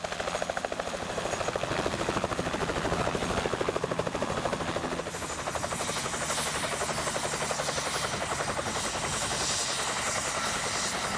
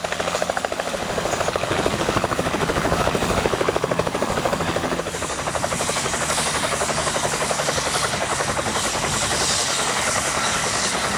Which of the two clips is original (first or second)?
first